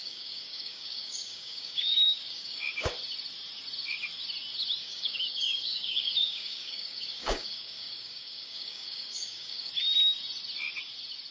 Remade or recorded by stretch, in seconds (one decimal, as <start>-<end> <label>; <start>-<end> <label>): 0.0-2.9 remade; 2.9-4.8 recorded; 4.8-9.7 remade; 9.7-11.3 recorded